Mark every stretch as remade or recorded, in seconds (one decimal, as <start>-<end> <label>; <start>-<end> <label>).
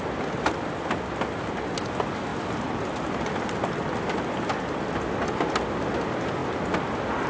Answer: 0.0-7.3 recorded